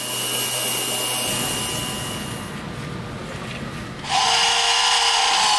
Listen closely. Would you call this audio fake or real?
real